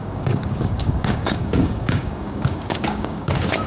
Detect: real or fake fake